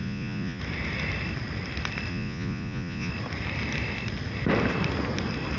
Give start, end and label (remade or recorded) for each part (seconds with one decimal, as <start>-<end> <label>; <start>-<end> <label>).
0.0-0.6 remade; 0.6-2.1 recorded; 2.1-3.1 remade; 3.1-5.6 recorded